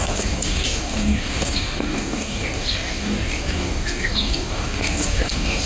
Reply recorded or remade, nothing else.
remade